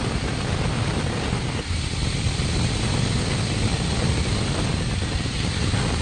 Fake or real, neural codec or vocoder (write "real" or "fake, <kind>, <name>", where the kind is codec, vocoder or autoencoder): real